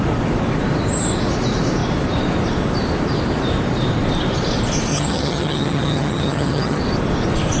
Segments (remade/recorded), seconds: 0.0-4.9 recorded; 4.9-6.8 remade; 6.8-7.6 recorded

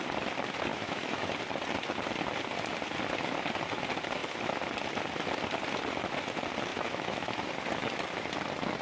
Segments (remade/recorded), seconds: 0.0-0.7 recorded; 0.7-1.3 remade; 1.3-6.7 recorded; 6.7-7.4 remade; 7.4-8.8 recorded

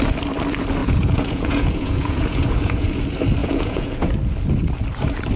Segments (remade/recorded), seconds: 0.0-0.8 recorded; 0.8-3.0 remade; 3.0-3.4 recorded; 3.4-4.1 remade; 4.1-5.4 recorded

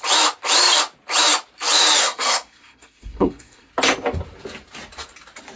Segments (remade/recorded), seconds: 0.0-2.0 recorded; 2.0-3.7 remade; 3.7-5.6 recorded

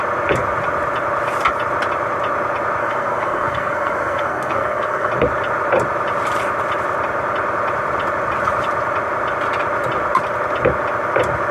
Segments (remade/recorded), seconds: 0.0-2.8 recorded; 2.8-5.1 remade; 5.1-11.5 recorded

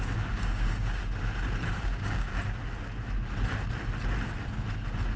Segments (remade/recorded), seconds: 0.0-1.0 remade; 1.0-1.7 recorded; 1.7-2.3 remade; 2.3-5.2 recorded